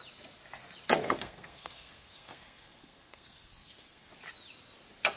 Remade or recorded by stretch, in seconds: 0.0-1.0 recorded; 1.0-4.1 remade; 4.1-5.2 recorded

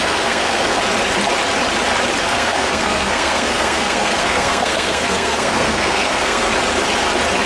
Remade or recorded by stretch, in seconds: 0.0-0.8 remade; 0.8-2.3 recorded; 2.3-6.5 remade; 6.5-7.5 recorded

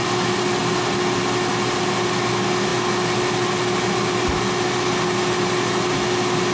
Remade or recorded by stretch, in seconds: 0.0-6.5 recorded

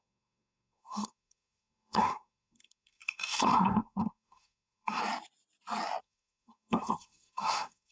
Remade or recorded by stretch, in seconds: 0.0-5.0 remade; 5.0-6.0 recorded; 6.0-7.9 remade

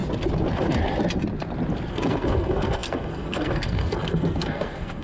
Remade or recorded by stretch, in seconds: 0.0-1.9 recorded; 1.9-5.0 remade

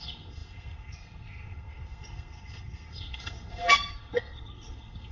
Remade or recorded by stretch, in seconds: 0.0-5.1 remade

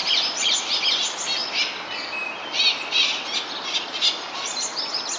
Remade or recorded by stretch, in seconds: 0.0-5.2 recorded